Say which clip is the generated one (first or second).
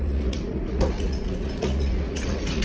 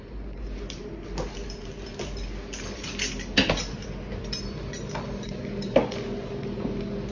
first